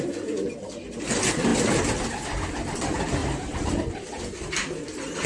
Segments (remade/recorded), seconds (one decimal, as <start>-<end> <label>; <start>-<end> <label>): 0.0-3.2 recorded; 3.2-5.3 remade